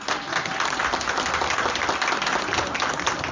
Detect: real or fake real